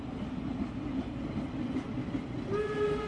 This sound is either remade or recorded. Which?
recorded